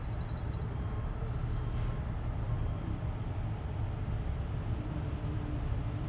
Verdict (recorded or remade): recorded